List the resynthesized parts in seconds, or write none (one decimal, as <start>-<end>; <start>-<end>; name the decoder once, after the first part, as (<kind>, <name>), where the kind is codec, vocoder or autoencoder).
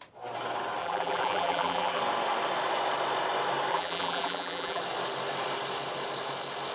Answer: 0.8-2.0 (vocoder, BigVGAN v2); 3.7-4.8